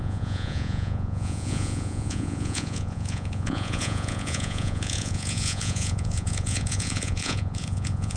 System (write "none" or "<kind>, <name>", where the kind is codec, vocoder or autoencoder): vocoder, Vocos